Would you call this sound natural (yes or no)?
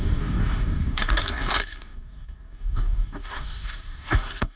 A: no